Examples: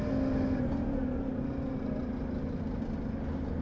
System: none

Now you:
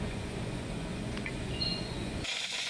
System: vocoder, Vocos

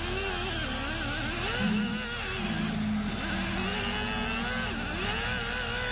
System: none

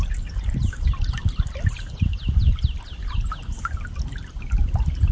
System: none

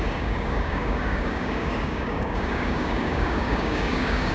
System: codec, DAC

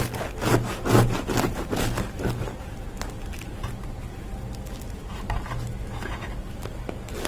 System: none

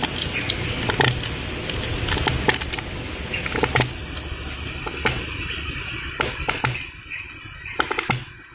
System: none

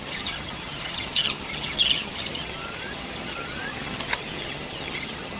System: vocoder, HiFi-GAN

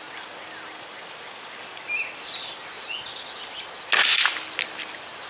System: none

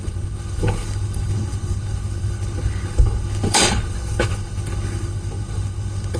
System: codec, HILCodec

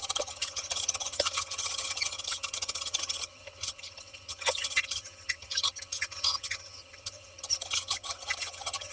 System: vocoder, HiFi-GAN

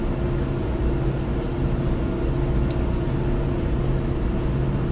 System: none